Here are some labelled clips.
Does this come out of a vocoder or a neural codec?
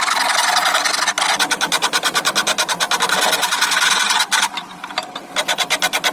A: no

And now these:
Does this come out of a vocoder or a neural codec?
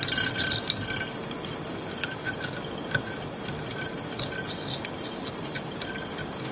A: no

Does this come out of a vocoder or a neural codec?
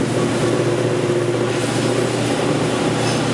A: no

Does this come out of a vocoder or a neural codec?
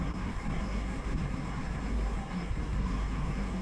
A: yes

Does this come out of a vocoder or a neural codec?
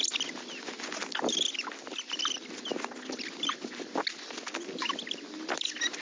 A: no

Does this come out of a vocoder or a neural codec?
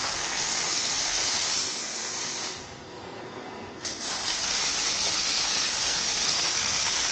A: yes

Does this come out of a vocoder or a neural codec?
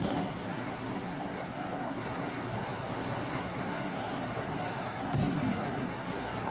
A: yes